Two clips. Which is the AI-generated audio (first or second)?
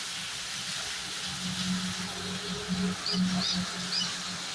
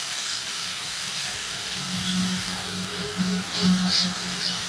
second